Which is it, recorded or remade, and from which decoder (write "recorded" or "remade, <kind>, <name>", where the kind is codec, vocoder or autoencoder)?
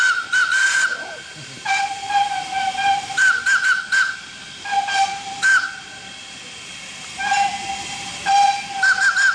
recorded